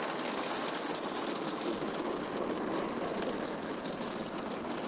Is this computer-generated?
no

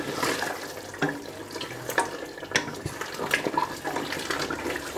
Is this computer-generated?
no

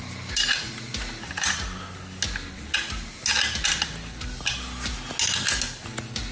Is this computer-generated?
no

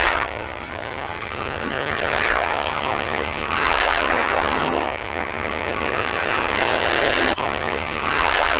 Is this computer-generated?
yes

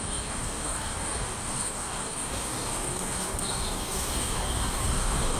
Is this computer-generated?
yes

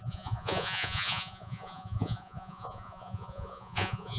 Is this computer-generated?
yes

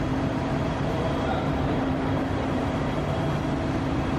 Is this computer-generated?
yes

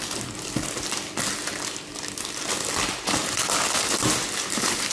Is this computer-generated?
no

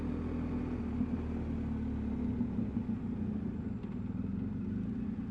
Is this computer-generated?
no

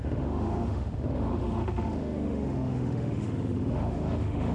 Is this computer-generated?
yes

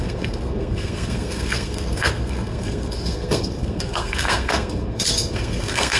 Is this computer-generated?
yes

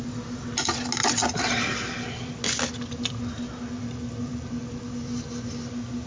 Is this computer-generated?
no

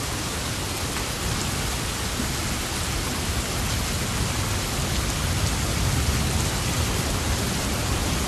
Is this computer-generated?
no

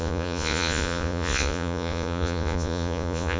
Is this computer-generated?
yes